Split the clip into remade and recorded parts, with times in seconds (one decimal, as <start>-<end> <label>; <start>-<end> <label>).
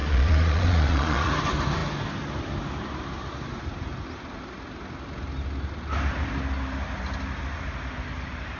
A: 0.0-1.3 remade; 1.3-8.6 recorded